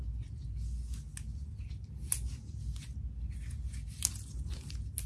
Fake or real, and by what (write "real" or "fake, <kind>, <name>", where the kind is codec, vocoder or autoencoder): real